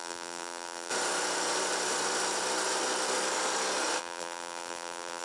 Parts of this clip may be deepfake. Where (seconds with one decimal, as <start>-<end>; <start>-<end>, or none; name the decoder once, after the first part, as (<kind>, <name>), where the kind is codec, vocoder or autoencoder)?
0.0-0.9 (vocoder, BigVGAN v2); 4.0-5.2